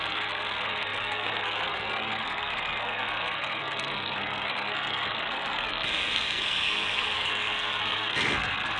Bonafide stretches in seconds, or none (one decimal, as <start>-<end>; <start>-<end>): none